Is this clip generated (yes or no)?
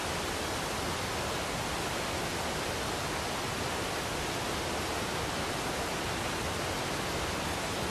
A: no